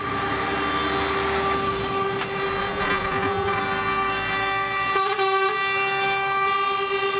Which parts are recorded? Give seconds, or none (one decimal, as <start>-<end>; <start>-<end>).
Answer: 0.0-2.7; 3.6-7.2